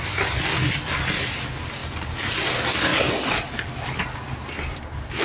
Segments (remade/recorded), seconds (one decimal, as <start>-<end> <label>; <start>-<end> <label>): 0.0-5.2 recorded